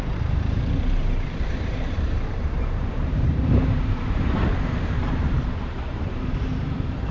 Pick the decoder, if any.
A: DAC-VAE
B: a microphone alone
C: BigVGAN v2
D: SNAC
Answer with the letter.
C